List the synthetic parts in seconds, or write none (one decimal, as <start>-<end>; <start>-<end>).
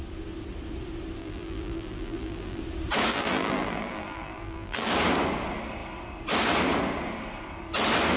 1.2-2.6; 3.1-4.9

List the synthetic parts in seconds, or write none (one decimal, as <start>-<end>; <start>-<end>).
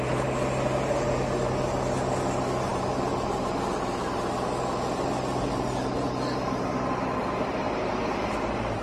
none